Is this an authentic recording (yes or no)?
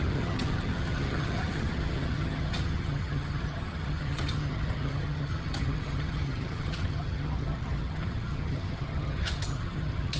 no